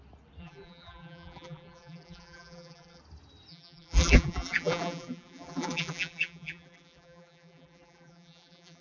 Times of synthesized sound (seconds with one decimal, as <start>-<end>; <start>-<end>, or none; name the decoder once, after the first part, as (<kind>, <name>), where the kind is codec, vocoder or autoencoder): 0.4-3.0 (vocoder, BigVGAN v2); 3.5-8.8